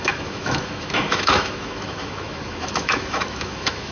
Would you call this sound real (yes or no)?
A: no